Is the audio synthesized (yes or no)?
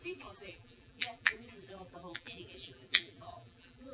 yes